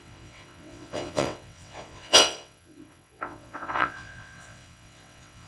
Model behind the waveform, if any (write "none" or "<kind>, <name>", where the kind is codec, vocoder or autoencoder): vocoder, WaveNeXt